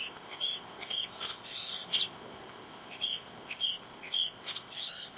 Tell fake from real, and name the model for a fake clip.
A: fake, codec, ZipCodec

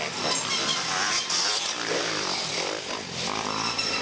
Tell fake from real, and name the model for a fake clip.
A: real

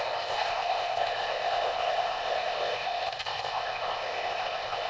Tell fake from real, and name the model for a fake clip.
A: fake, codec, ZipCodec